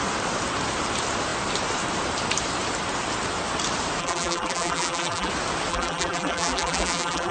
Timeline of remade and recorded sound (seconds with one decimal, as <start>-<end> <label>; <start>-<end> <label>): 0.0-4.0 recorded; 4.0-5.3 remade; 5.3-5.7 recorded; 5.7-7.3 remade